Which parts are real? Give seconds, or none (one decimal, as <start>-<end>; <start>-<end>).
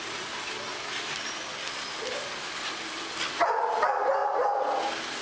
0.0-5.2